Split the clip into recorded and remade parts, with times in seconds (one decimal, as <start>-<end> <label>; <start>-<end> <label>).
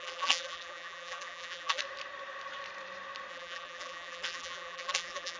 0.0-1.8 remade; 1.8-3.3 recorded; 3.3-5.4 remade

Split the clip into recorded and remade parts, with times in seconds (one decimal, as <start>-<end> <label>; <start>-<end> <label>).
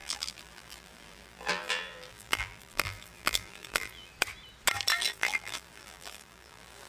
0.0-4.1 remade; 4.1-4.9 recorded; 4.9-6.9 remade